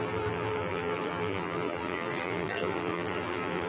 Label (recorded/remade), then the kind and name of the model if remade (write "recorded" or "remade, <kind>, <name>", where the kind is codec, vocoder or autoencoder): remade, vocoder, BigVGAN v2